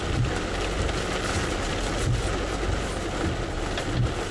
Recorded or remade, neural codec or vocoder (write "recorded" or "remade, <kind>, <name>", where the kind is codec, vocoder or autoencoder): recorded